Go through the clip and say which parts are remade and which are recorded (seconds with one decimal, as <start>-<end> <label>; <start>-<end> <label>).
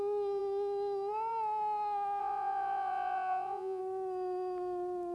0.0-2.2 recorded; 2.2-3.8 remade; 3.8-5.1 recorded